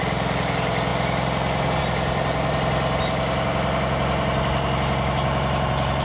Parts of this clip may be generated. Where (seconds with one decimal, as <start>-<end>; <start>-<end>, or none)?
none